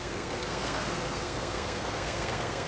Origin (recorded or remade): remade